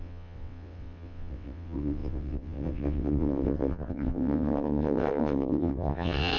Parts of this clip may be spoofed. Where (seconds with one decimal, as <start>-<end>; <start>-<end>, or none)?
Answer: 0.0-6.4